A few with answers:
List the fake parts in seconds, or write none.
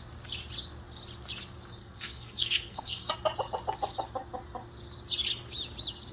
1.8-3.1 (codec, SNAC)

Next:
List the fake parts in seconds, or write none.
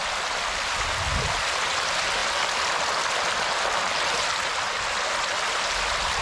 none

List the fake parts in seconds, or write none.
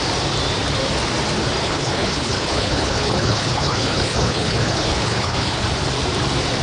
1.6-5.6 (codec, HILCodec)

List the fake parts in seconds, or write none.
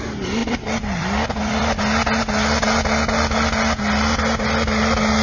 0.4-1.8 (vocoder, BigVGAN v2)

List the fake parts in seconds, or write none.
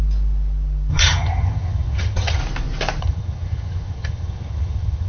0.9-2.4 (vocoder, HiFi-GAN); 3.0-5.1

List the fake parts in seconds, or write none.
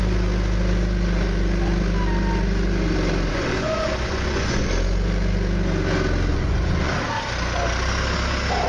3.3-4.7 (vocoder, Vocos); 6.3-6.9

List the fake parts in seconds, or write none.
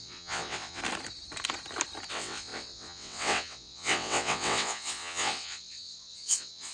0.0-0.8 (vocoder, WaveNeXt); 2.1-6.7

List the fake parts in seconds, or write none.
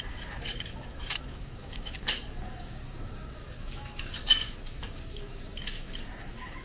0.0-6.6 (codec, DAC)